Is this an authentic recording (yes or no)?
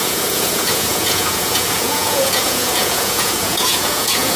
no